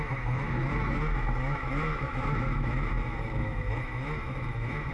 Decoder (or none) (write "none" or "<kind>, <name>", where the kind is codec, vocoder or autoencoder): autoencoder, DAC-VAE